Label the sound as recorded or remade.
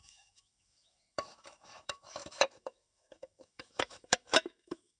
remade